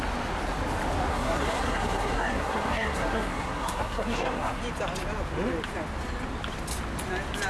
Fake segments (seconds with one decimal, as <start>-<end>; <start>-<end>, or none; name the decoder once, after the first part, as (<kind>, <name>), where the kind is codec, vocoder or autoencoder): 1.1-4.6 (codec, SNAC)